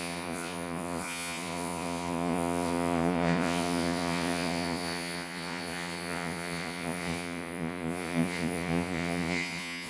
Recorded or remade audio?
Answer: remade